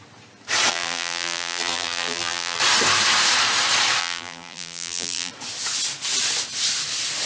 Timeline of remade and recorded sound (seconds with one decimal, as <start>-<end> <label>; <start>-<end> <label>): 0.0-0.7 recorded; 0.7-2.6 remade; 2.6-4.0 recorded; 4.0-5.3 remade; 5.3-7.3 recorded